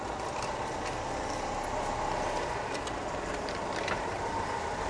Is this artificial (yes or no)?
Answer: no